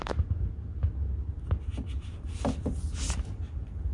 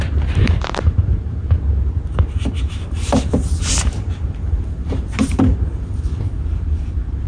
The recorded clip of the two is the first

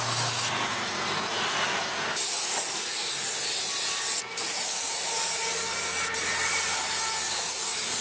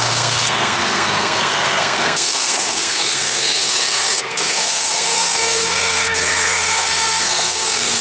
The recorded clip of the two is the first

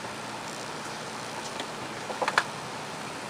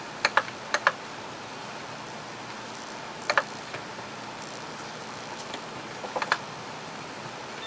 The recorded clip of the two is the first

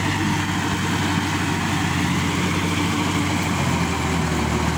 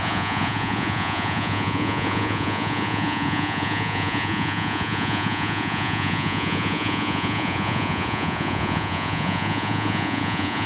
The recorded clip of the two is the first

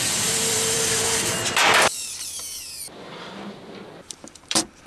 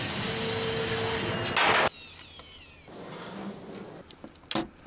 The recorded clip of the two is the second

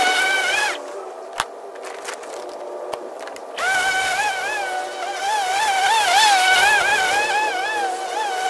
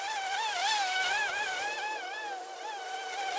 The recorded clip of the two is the first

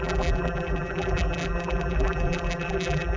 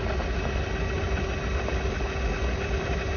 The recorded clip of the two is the second